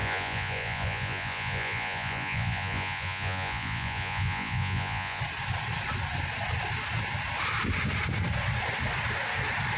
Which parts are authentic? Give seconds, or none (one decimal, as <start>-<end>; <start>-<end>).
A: 5.2-9.8